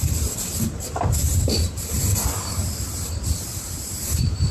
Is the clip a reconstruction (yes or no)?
yes